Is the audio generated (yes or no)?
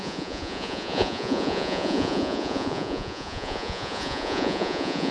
yes